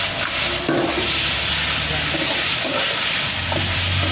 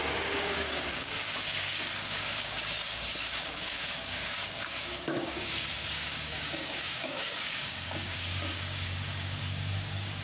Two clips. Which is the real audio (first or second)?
first